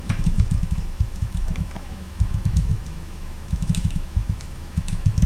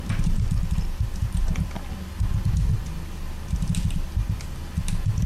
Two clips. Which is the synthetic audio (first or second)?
first